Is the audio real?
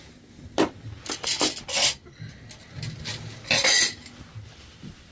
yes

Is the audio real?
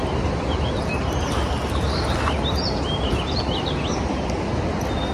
yes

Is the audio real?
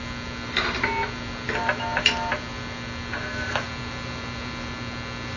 yes